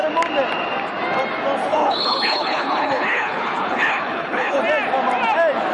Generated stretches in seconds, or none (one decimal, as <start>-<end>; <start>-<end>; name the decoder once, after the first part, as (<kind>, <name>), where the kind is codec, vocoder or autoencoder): 1.7-4.6 (codec, HILCodec)